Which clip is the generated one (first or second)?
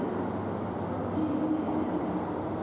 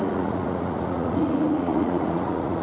second